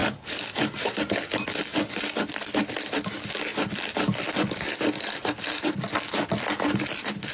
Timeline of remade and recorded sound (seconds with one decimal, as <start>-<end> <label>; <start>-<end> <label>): 0.0-3.5 recorded; 3.5-4.7 remade; 4.7-7.3 recorded